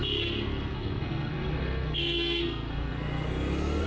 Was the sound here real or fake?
fake